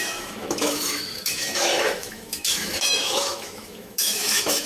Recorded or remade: remade